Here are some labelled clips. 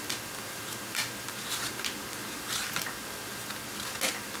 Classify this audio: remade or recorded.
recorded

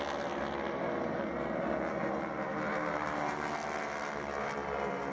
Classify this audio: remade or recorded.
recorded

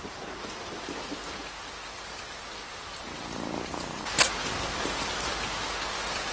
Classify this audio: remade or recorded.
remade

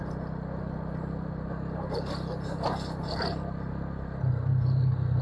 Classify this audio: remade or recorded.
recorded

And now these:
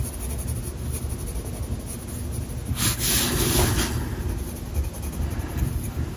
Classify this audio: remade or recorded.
recorded